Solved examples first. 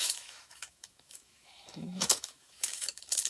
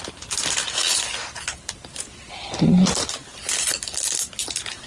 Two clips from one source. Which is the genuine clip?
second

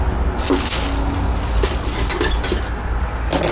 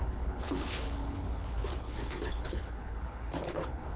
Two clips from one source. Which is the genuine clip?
first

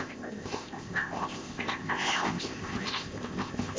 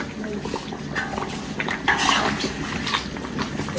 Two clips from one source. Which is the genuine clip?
second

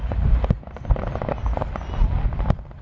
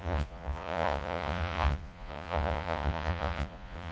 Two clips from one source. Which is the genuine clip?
first